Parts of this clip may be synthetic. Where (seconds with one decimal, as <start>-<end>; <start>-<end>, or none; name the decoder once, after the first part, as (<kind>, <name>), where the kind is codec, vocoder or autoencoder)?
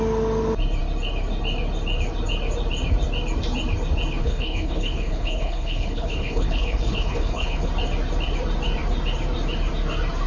4.2-7.7 (codec, HILCodec)